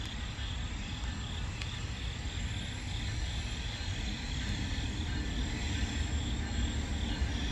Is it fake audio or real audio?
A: real